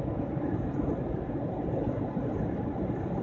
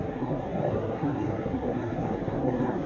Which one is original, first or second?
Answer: first